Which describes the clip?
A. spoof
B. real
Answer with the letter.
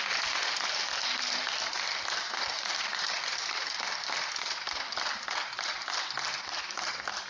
B